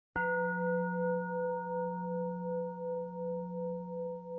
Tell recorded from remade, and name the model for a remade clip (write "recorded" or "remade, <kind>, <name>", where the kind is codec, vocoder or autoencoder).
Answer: recorded